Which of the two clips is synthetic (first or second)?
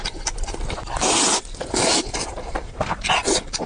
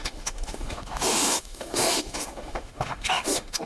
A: second